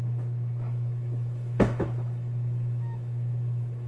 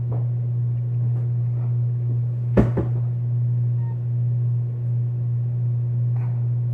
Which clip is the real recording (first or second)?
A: second